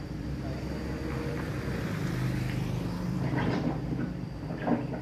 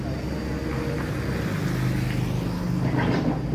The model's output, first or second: first